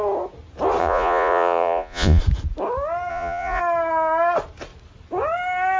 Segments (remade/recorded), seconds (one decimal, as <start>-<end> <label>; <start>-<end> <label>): 0.0-0.8 recorded; 0.8-2.2 remade; 2.2-3.1 recorded; 3.1-3.6 remade; 3.6-5.8 recorded